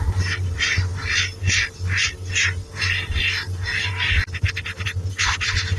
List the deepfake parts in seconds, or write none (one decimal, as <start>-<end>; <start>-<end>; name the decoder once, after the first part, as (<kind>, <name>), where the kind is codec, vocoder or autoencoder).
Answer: none